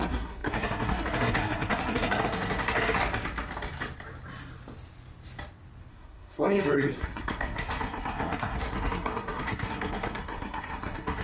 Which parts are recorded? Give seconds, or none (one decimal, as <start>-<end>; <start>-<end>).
3.0-5.9